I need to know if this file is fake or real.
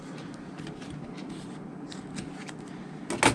real